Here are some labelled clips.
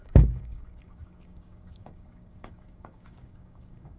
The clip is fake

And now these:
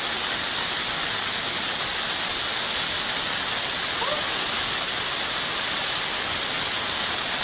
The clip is real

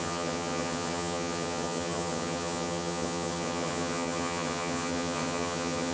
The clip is fake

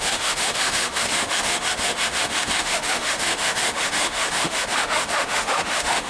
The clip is fake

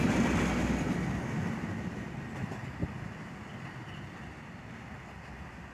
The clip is real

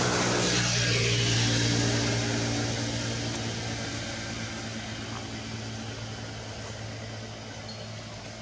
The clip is real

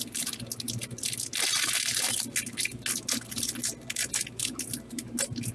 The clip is real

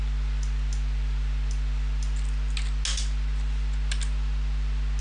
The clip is real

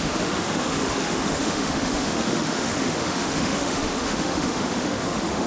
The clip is fake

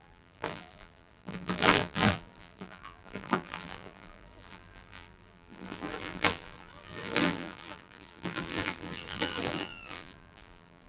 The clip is fake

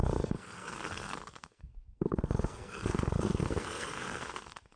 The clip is fake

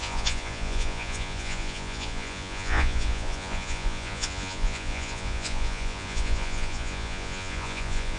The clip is fake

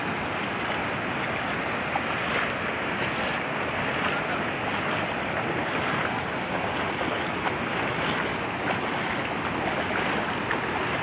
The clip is real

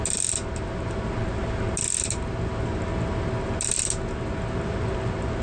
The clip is real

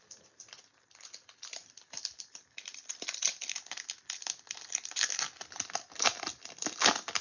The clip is real